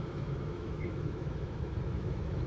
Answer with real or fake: fake